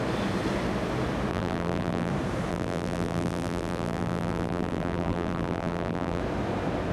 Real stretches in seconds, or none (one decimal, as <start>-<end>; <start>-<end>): 0.0-1.3; 2.1-2.5; 6.2-6.9